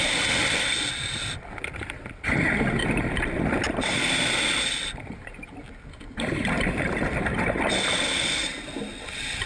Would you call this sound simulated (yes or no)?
no